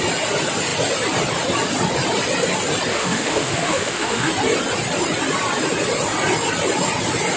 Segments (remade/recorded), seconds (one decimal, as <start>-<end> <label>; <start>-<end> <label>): 0.0-2.9 recorded; 2.9-4.3 remade; 4.3-7.4 recorded